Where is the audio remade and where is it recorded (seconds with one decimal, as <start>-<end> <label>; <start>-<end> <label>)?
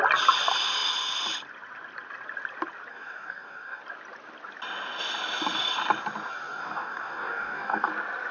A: 0.0-2.9 recorded; 2.9-3.8 remade; 3.8-6.3 recorded; 6.3-7.9 remade; 7.9-8.3 recorded